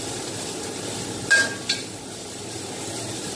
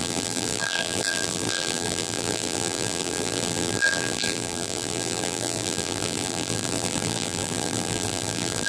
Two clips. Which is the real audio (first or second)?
first